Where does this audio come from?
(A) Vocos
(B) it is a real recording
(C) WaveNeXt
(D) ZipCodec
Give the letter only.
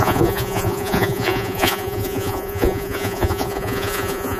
A